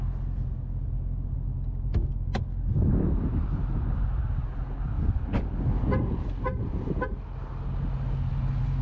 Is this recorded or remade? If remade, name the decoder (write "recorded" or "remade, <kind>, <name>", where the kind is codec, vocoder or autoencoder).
recorded